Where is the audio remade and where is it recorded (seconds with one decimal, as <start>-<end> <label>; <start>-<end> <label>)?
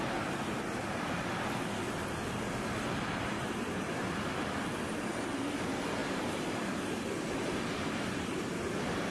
0.0-6.0 recorded; 6.0-6.9 remade; 6.9-9.1 recorded